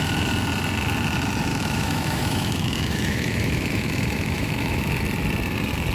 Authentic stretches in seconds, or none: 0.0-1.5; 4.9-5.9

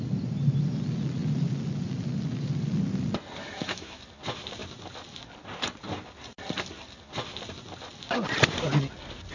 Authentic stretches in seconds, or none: 0.0-3.4; 4.0-9.3

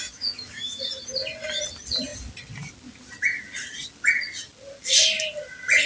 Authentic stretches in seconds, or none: 0.8-5.9

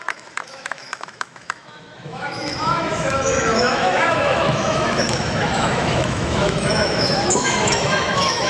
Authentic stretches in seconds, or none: none